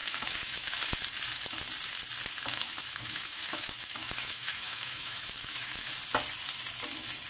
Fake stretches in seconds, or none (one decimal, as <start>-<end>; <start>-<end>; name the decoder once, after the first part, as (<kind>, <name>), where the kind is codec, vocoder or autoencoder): 0.0-0.9 (autoencoder, DAC-VAE); 2.5-5.9